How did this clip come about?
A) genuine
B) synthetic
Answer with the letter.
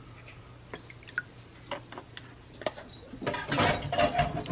A